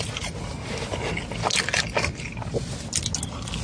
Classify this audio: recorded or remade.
recorded